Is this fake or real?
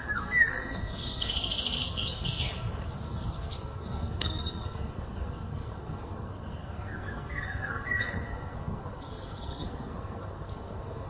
fake